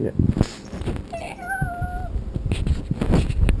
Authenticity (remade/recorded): recorded